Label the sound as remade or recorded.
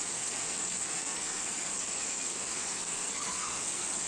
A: remade